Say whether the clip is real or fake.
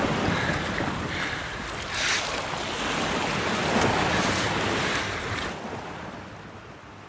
real